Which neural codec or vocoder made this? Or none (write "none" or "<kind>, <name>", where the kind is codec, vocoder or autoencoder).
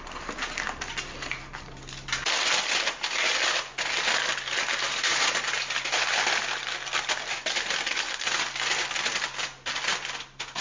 none